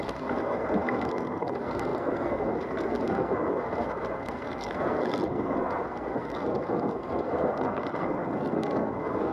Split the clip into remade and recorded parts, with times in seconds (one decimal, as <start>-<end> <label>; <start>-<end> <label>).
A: 0.0-9.3 remade